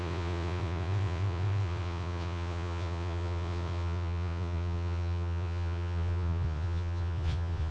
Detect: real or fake fake